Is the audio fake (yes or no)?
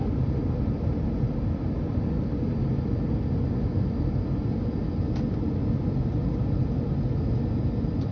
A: no